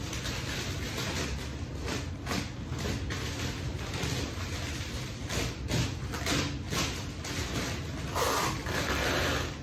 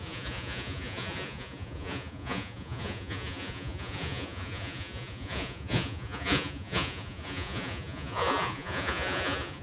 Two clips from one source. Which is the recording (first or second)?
first